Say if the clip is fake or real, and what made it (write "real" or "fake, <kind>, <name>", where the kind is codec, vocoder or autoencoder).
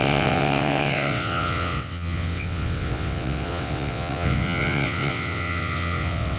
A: fake, vocoder, WaveNeXt